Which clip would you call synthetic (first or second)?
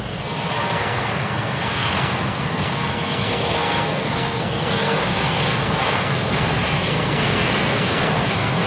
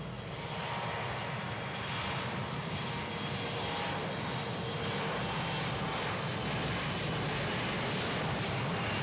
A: first